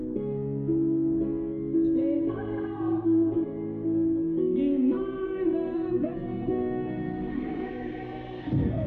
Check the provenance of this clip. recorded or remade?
remade